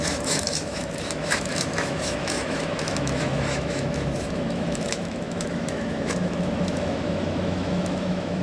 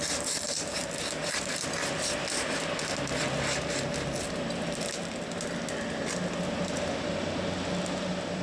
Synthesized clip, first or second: first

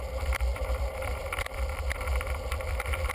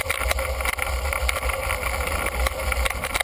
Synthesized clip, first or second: first